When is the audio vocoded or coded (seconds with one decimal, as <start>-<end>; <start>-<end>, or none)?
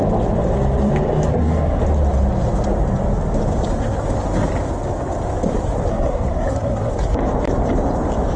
1.3-1.8; 5.9-6.9